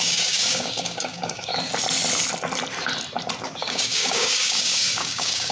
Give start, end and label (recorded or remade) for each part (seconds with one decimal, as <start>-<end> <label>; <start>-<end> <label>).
0.0-1.5 remade; 1.5-3.4 recorded; 3.4-5.5 remade